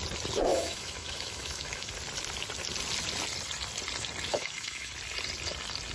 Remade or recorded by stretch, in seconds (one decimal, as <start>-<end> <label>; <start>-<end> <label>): 0.0-0.5 recorded; 0.5-1.9 remade; 1.9-4.3 recorded; 4.3-4.9 remade; 4.9-5.9 recorded